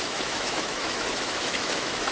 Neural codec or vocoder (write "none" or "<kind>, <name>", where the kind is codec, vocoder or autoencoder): autoencoder, DAC-VAE